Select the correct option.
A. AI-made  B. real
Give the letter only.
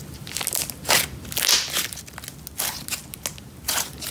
B